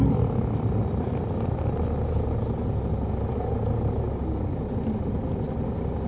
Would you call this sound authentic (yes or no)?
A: yes